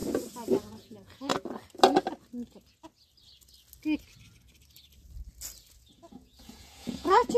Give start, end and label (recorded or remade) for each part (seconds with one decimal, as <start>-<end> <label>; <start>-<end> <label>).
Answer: 0.0-0.6 recorded; 0.6-1.3 remade; 1.3-5.7 recorded; 5.7-7.4 remade